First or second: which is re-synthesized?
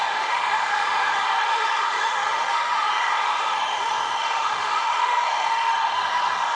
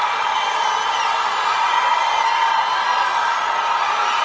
first